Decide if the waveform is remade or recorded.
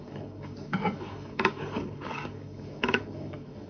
remade